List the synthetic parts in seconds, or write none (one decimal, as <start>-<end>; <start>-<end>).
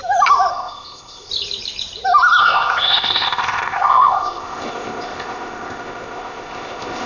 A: 0.5-1.3; 2.4-7.1